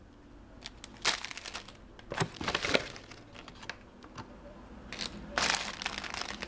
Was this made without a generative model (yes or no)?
yes